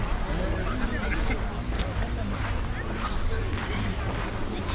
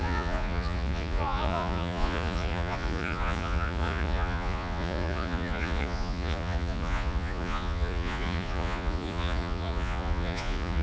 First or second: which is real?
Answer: first